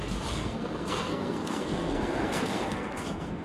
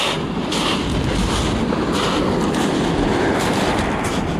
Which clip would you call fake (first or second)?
first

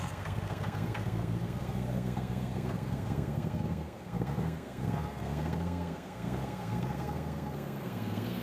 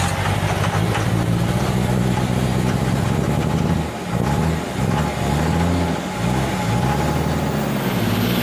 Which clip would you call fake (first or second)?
first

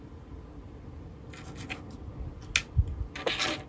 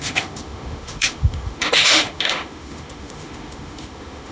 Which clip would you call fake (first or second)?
second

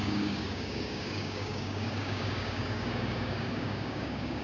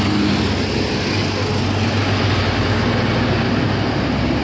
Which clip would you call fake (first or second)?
first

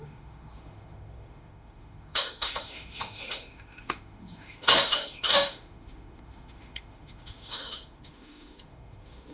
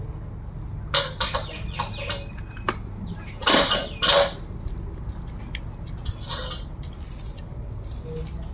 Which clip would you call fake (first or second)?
first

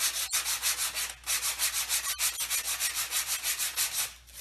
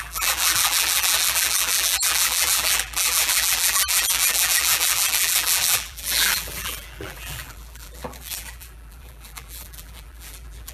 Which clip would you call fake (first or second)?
second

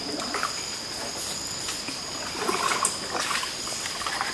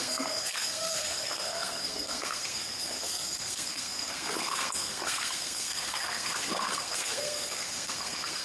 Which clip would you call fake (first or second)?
second